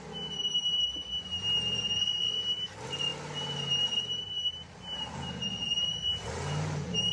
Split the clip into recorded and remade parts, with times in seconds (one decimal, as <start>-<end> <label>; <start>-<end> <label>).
0.0-7.1 recorded